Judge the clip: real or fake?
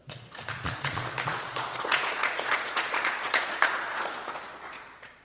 fake